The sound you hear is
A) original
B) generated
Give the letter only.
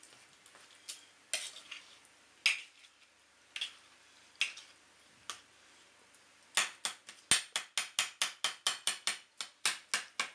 A